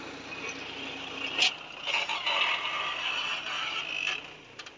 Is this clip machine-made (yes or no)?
no